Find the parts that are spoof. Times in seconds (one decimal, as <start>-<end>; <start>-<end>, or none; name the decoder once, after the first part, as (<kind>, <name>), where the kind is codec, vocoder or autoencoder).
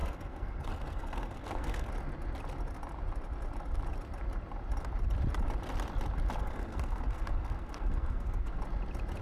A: 0.0-1.9 (codec, SNAC); 6.4-8.6